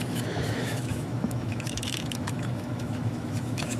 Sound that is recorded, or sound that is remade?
remade